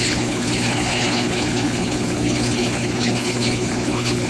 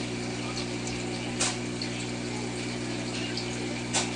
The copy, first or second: first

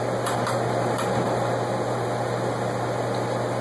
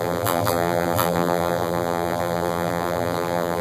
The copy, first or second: second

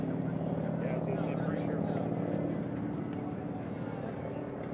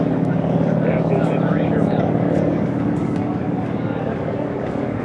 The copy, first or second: second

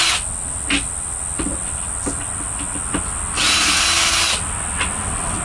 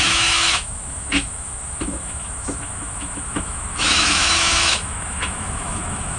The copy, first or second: second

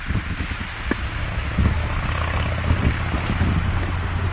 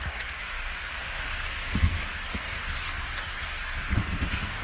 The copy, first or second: second